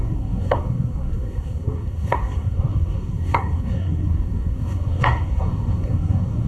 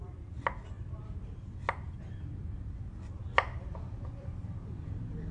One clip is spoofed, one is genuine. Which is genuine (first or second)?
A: second